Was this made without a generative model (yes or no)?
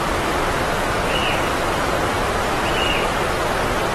yes